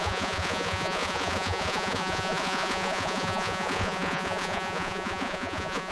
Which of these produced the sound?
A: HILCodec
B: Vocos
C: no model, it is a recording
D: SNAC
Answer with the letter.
B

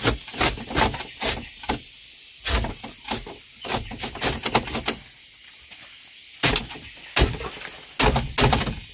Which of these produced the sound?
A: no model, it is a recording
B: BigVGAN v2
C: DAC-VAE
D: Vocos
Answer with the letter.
A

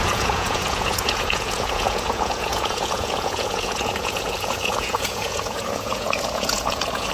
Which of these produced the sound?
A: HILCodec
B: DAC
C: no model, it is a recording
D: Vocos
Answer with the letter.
D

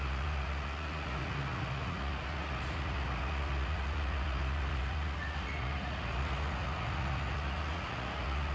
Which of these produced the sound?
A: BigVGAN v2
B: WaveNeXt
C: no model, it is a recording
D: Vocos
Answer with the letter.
D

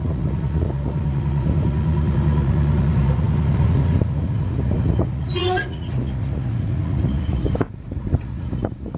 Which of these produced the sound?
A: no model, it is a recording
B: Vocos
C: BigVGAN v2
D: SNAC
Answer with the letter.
B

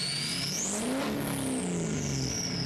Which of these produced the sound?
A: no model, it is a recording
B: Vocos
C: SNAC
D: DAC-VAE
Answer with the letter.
A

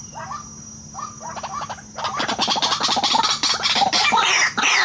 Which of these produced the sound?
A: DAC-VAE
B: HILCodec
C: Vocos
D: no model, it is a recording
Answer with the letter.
D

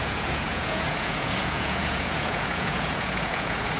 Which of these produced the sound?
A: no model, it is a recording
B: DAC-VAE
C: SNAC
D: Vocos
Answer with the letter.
D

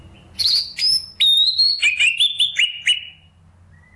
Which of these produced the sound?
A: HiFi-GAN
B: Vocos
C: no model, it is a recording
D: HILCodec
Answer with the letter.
C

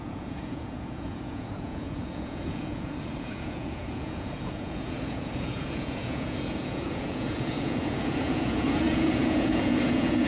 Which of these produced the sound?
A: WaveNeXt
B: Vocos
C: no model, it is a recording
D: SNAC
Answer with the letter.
B